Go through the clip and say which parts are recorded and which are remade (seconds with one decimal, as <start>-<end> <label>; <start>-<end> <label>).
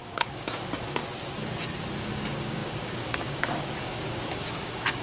0.0-1.0 remade; 1.0-2.0 recorded; 2.0-5.0 remade